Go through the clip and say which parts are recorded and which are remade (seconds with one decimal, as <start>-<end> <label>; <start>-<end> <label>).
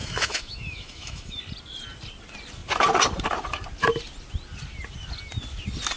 0.0-1.4 remade; 1.4-6.0 recorded